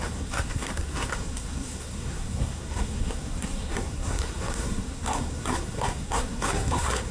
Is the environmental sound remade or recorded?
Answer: remade